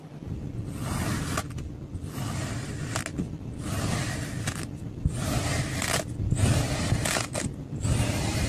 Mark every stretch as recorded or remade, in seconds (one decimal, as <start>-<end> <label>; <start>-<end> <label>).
0.0-8.5 recorded